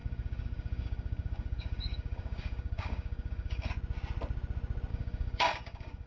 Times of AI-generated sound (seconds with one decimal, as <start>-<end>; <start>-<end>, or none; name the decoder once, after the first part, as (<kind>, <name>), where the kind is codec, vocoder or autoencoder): 0.0-3.7 (codec, DAC); 4.9-6.1